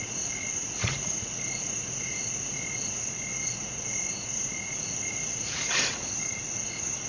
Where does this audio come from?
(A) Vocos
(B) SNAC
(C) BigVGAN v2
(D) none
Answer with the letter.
A